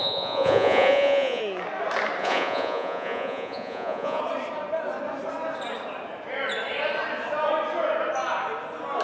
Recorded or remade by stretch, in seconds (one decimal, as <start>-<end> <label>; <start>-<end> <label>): 0.0-1.4 remade; 1.4-2.2 recorded; 2.2-4.2 remade; 4.2-9.0 recorded